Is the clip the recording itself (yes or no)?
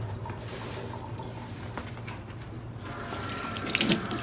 yes